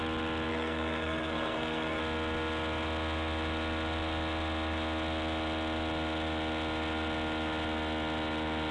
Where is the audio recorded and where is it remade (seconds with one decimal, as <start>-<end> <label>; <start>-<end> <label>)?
0.0-0.5 recorded; 0.5-2.0 remade; 2.0-8.7 recorded